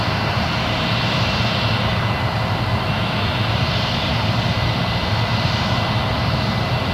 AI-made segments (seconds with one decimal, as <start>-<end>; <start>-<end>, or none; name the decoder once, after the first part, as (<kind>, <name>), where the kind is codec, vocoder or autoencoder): 2.7-3.5 (autoencoder, DAC-VAE)